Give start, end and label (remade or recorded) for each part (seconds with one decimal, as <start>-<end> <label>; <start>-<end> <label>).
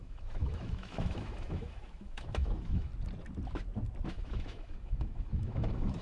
0.0-2.9 remade; 2.9-4.1 recorded; 4.1-6.0 remade